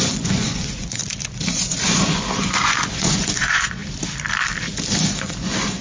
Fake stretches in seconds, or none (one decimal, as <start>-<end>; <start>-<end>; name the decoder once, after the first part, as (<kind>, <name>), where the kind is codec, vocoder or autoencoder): 0.0-1.0 (vocoder, Vocos); 1.5-3.8; 5.0-5.8